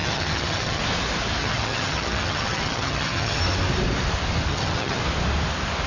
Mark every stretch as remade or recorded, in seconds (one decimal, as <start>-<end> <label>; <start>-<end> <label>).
0.0-0.8 remade; 0.8-1.4 recorded; 1.4-3.4 remade; 3.4-4.5 recorded; 4.5-5.0 remade; 5.0-5.9 recorded